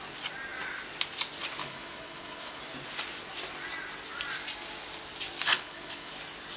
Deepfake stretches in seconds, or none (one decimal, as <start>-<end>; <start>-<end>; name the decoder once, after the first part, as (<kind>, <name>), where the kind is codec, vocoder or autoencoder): 1.6-2.6 (codec, HILCodec); 5.5-6.1